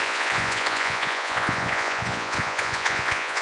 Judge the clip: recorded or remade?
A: remade